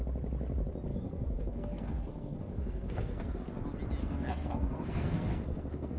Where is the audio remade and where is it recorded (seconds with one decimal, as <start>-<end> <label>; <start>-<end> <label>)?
0.0-0.9 recorded; 0.9-3.4 remade; 3.4-4.0 recorded; 4.0-6.0 remade